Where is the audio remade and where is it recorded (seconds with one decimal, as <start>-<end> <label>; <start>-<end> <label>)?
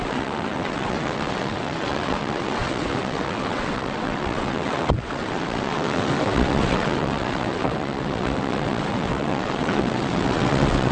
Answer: 0.0-10.9 remade